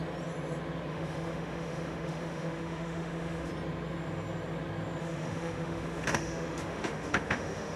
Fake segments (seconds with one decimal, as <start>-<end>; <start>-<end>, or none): 0.9-3.5; 5.0-7.8